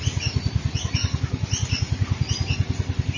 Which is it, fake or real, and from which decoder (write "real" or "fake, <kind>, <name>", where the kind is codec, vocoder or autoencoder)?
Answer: real